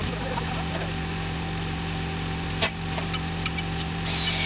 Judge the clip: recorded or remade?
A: recorded